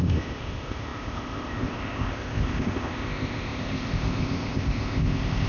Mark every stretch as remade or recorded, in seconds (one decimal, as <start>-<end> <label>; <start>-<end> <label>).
0.0-5.5 remade